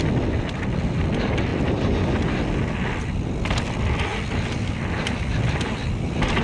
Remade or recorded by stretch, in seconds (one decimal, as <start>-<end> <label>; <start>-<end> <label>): 0.0-6.4 recorded